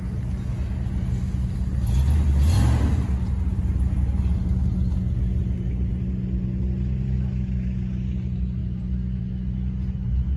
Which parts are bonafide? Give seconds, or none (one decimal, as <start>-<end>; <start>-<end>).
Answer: 0.0-10.4